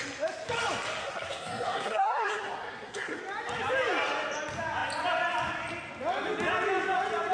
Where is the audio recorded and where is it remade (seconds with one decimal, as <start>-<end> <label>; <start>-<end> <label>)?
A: 0.0-1.0 recorded; 1.0-3.2 remade; 3.2-7.3 recorded